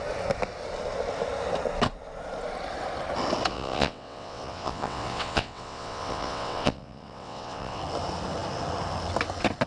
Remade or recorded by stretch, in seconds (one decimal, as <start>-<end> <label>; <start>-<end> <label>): 0.0-3.5 recorded; 3.5-7.8 remade; 7.8-9.7 recorded